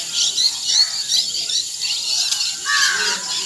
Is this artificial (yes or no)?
no